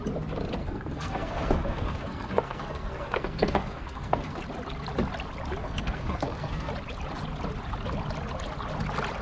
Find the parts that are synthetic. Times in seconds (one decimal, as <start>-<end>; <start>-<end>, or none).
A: 0.6-4.4; 5.6-6.7